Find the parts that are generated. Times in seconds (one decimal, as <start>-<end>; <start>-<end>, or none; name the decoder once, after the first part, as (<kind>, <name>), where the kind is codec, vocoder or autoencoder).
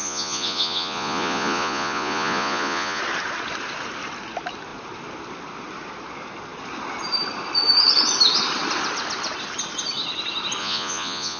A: 0.0-3.0 (vocoder, Vocos); 10.6-11.4